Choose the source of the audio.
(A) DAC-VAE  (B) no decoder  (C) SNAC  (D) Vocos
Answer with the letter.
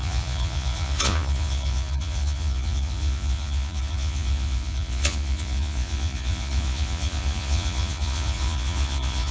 D